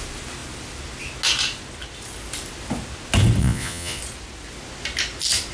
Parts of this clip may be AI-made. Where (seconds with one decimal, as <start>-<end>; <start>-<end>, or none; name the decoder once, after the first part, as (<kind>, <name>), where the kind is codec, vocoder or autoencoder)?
3.4-4.0 (vocoder, Vocos)